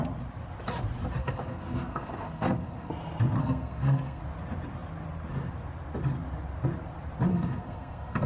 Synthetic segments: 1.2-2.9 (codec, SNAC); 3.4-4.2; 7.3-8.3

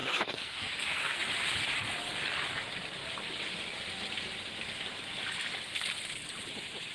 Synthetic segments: 0.0-1.2 (codec, SNAC)